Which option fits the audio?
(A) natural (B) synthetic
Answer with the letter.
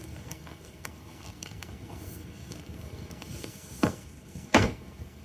B